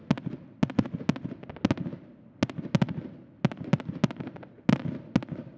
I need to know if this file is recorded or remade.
recorded